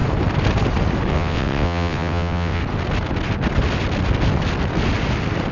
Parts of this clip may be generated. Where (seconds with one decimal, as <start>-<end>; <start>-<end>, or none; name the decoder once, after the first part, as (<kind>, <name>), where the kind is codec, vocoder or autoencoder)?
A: 1.1-2.6 (vocoder, WaveNeXt)